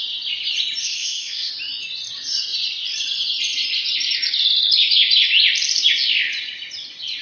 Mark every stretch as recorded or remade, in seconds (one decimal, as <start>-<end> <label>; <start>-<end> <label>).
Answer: 0.0-0.8 recorded; 0.8-1.5 remade; 1.5-7.2 recorded